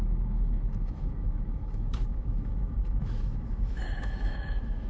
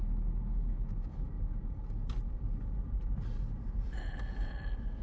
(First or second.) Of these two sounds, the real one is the second